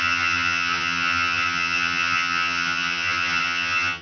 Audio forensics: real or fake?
fake